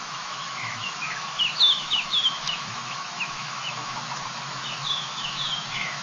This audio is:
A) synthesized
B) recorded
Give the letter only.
A